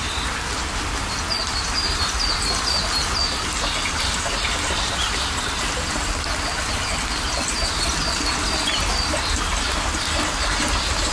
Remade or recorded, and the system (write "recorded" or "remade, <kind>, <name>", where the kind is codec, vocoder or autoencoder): recorded